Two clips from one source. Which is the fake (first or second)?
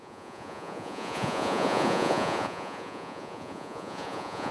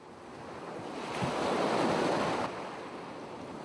first